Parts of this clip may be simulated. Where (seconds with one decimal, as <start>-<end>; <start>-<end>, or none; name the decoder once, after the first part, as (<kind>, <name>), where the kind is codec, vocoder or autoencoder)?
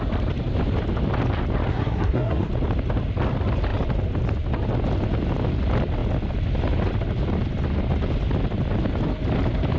1.7-2.5 (codec, SNAC)